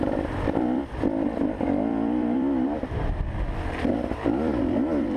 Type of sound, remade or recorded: remade